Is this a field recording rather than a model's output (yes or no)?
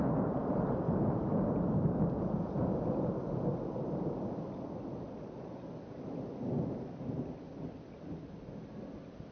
yes